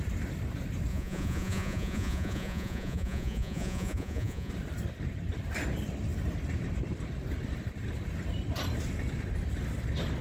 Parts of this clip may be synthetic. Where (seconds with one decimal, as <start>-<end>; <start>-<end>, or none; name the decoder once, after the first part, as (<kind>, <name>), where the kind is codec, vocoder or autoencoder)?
0.9-4.5 (vocoder, Vocos)